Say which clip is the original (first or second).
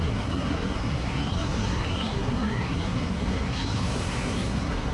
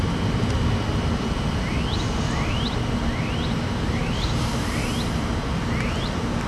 second